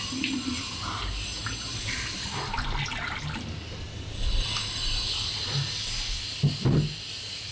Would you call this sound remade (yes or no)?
no